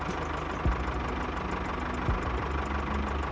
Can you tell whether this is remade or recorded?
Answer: recorded